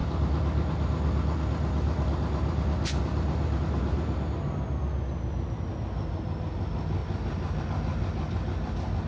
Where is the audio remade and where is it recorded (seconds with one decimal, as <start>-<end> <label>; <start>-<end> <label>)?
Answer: 0.0-9.1 recorded